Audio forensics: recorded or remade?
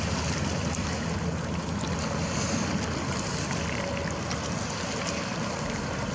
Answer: recorded